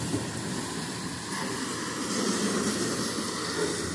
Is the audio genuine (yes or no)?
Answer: yes